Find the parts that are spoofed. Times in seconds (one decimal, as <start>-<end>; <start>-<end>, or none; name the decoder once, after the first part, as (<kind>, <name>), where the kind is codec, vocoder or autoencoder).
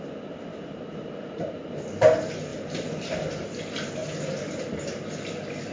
0.5-1.5 (vocoder, BigVGAN v2); 2.5-3.5; 4.0-4.9